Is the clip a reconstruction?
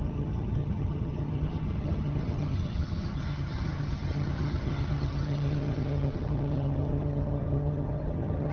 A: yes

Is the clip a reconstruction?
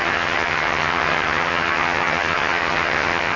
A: yes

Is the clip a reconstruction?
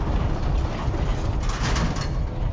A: no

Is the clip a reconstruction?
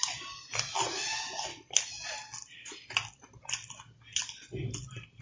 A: no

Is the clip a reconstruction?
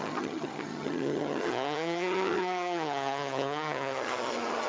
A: yes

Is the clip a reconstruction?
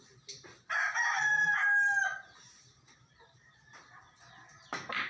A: no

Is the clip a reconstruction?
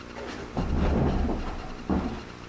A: no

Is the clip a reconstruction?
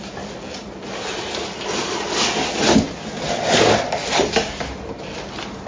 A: no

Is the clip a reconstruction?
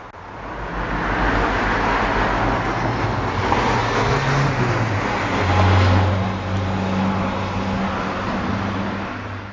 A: no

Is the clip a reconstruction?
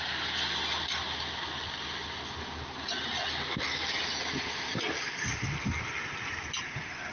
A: no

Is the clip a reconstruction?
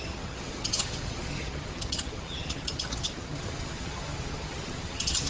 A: yes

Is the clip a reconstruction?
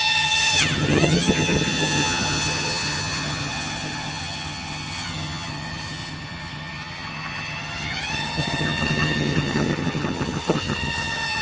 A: yes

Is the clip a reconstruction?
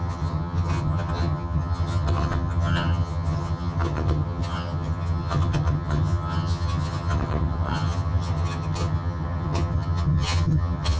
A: yes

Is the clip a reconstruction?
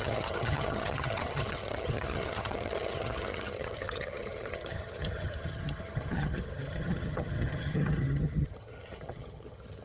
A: yes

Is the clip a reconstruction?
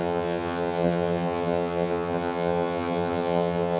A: yes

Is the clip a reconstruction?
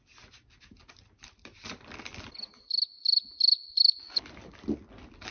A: no